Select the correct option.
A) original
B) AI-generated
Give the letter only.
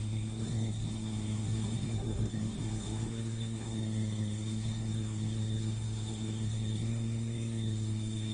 B